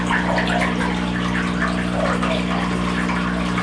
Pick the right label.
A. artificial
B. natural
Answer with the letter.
B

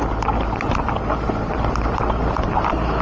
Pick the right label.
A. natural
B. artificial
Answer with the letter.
A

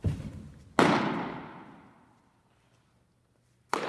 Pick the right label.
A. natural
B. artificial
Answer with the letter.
A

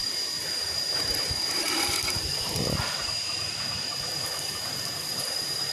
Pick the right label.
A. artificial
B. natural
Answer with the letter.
A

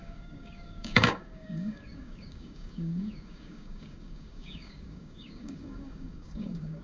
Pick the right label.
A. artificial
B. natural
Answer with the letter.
A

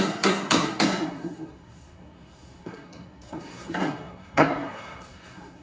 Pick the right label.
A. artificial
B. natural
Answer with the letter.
A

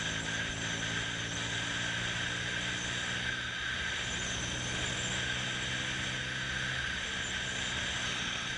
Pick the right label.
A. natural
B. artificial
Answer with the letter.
A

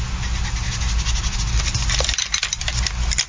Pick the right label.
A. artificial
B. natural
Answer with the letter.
B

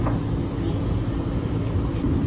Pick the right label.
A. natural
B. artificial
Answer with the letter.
A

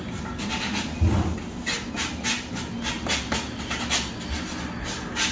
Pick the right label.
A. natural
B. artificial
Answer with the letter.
A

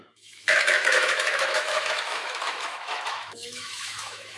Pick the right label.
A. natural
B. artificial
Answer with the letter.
B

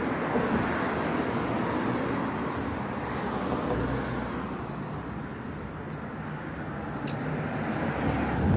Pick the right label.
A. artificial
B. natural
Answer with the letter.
B